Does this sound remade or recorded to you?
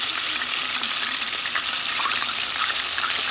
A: recorded